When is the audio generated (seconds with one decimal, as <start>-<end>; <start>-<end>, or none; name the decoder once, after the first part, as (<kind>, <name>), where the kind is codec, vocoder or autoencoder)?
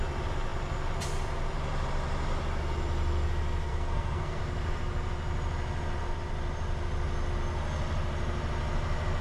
3.7-4.4 (codec, SNAC)